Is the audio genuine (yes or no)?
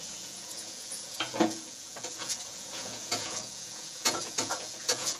no